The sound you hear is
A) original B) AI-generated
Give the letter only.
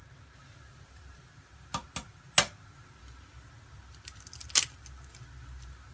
A